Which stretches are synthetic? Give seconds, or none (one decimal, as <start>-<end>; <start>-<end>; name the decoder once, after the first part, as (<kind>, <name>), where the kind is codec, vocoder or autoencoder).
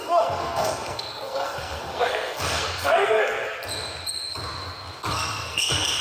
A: 0.0-3.6 (codec, SNAC); 5.1-6.0